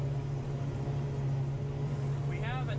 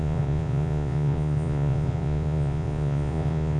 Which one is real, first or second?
first